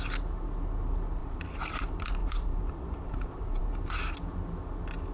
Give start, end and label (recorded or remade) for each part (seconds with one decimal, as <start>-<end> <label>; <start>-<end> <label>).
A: 0.0-1.2 recorded; 1.2-1.7 remade; 1.7-2.2 recorded; 2.2-3.6 remade; 3.6-5.1 recorded